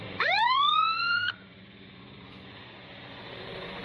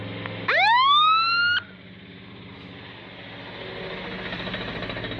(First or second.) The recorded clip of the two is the second